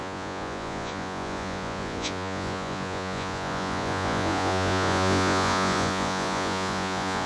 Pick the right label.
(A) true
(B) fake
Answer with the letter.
B